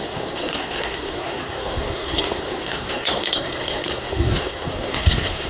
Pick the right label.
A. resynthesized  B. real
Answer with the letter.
A